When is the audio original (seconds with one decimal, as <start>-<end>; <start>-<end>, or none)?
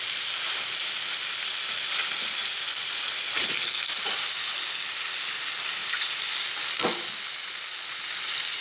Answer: 0.0-5.8; 6.4-8.6